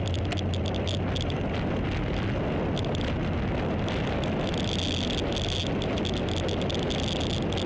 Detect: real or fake real